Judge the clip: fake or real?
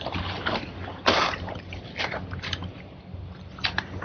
real